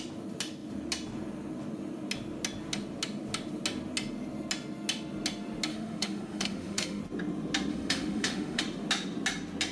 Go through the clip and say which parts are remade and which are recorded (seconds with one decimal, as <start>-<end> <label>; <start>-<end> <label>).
0.0-5.7 recorded; 5.7-7.0 remade; 7.0-7.7 recorded; 7.7-8.6 remade; 8.6-9.7 recorded